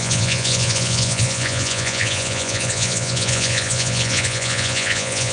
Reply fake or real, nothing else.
fake